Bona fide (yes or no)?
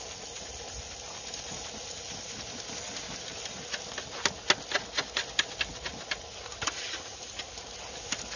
yes